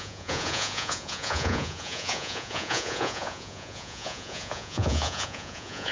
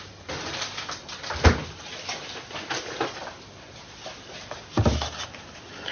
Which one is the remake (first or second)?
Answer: first